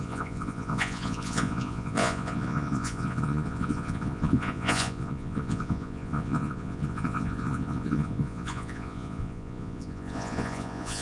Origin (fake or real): fake